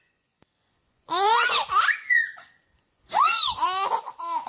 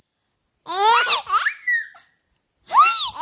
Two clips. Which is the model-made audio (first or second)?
first